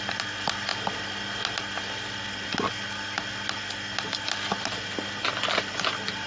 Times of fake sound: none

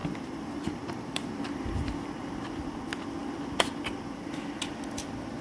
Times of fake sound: 0.0-1.4